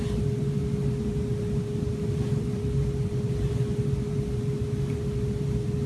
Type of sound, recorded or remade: recorded